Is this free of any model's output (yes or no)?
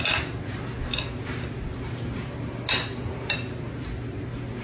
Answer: yes